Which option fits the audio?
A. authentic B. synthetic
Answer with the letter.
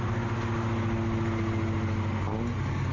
A